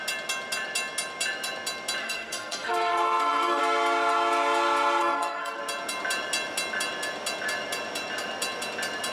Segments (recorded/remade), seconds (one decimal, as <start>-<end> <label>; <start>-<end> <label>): 0.0-2.0 recorded; 2.0-3.6 remade; 3.6-5.0 recorded; 5.0-5.6 remade; 5.6-9.1 recorded